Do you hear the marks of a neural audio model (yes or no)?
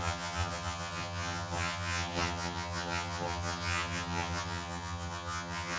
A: yes